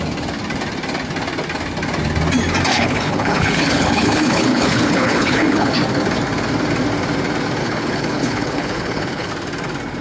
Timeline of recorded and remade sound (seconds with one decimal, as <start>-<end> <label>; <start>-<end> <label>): 0.0-2.7 recorded; 2.7-5.7 remade; 5.7-7.6 recorded; 7.6-9.3 remade; 9.3-10.0 recorded